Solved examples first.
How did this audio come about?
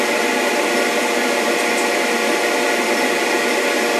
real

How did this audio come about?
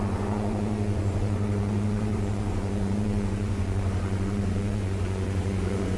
fake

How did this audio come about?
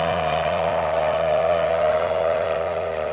fake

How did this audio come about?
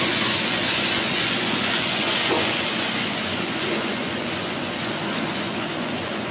fake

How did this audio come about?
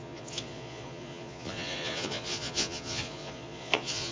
fake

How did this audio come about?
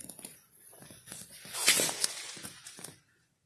fake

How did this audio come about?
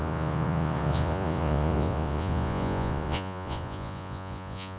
fake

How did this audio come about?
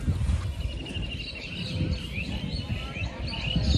real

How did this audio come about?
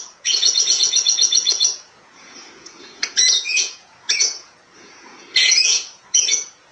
fake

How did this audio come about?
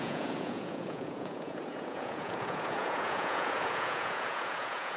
fake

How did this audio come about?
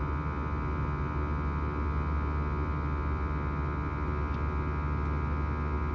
real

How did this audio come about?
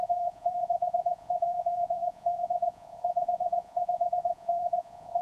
fake